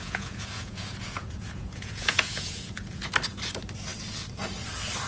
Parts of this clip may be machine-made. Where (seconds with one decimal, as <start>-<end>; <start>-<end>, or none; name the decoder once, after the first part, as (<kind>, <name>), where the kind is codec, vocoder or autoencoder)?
0.0-3.1 (vocoder, Vocos)